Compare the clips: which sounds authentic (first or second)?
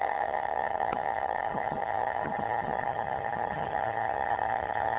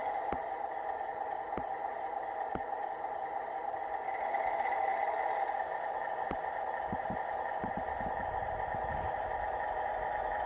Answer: second